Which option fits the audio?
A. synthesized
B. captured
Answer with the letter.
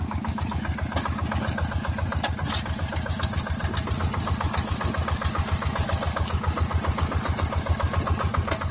B